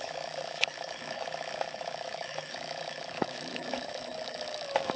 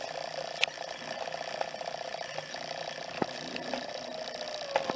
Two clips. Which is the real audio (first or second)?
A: second